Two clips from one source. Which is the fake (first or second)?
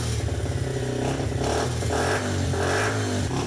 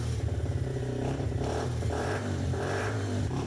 second